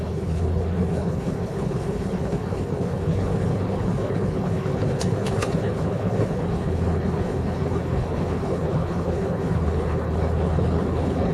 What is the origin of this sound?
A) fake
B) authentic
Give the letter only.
A